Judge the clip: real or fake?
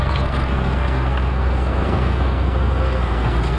fake